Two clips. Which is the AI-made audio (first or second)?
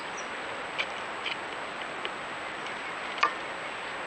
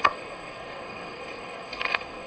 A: second